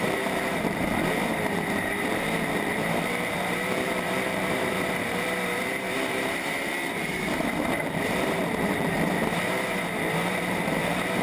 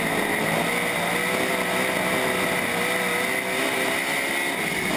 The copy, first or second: first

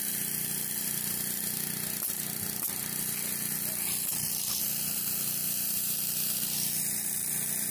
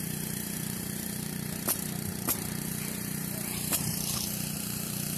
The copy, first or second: second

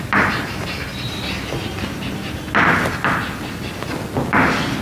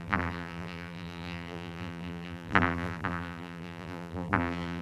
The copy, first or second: second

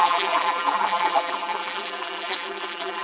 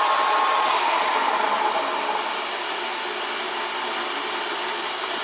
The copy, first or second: first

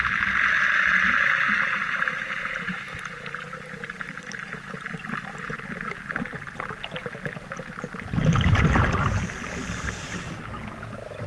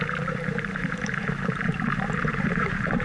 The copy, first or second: second